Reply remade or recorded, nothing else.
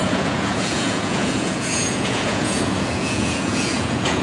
remade